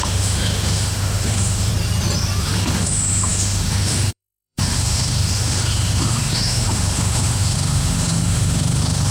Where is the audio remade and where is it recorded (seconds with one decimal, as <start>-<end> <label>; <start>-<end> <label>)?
0.0-1.7 remade; 1.7-2.4 recorded; 2.4-9.1 remade